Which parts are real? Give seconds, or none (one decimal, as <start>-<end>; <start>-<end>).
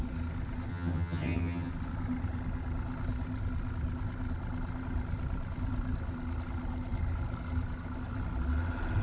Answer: 0.0-0.7; 1.7-9.0